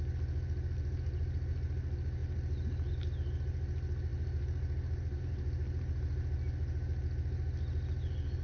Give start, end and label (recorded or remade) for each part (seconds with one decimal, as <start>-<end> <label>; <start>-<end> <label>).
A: 0.0-8.4 recorded